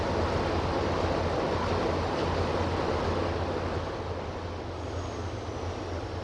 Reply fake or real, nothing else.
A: real